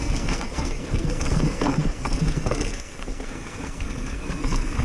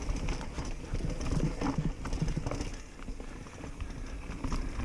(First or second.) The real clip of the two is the second